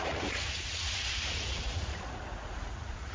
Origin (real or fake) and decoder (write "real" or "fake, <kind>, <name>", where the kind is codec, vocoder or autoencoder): fake, vocoder, Vocos